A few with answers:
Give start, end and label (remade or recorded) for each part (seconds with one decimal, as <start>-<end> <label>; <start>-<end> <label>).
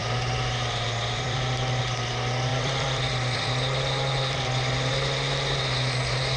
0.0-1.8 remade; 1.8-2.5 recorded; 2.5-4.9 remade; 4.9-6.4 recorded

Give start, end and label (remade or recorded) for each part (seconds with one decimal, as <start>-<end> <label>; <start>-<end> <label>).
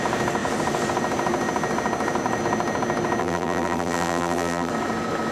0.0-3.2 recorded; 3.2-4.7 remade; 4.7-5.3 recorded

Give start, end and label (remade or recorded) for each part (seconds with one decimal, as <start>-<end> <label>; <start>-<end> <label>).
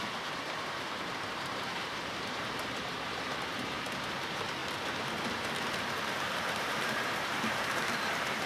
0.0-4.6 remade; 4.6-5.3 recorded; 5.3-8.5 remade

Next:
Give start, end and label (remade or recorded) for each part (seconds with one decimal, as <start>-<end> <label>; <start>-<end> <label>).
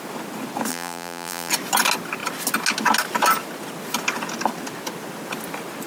0.0-0.7 recorded; 0.7-1.5 remade; 1.5-5.9 recorded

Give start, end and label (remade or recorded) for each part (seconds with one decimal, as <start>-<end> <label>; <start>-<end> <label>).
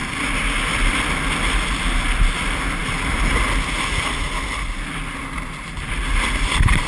0.0-2.8 recorded; 2.8-3.4 remade; 3.4-6.9 recorded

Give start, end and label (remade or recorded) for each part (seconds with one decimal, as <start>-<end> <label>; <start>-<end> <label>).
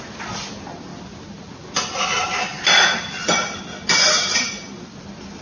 0.0-5.4 recorded